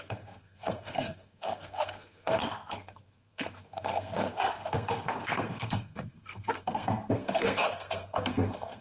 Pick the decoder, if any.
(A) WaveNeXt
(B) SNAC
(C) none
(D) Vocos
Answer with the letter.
B